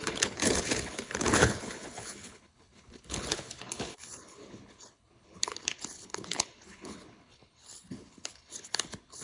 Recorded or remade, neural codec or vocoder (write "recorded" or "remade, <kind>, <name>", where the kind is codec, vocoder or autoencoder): remade, codec, HILCodec